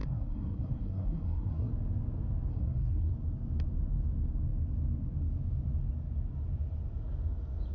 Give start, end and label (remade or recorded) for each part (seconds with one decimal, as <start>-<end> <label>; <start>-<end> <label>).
0.0-1.7 remade; 1.7-2.5 recorded; 2.5-3.1 remade; 3.1-7.7 recorded